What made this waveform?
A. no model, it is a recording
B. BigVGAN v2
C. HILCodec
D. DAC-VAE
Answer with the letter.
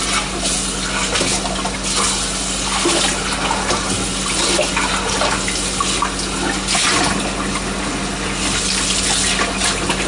A